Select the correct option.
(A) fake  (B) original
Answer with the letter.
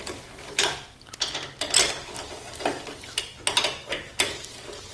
B